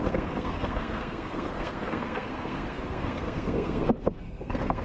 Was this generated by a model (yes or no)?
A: yes